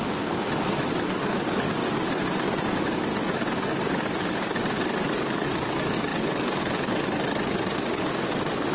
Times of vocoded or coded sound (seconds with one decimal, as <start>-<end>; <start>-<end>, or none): 0.0-1.8; 2.7-3.1; 3.7-8.7